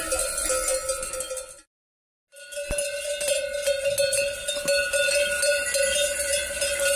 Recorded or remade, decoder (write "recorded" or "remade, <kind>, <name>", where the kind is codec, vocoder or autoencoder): recorded